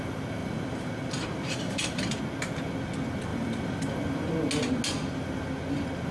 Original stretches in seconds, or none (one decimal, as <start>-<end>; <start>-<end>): 0.0-0.4; 2.2-3.3; 4.3-6.1